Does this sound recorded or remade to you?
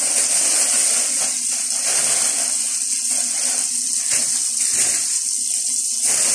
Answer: recorded